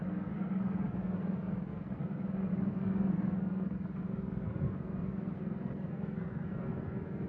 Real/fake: fake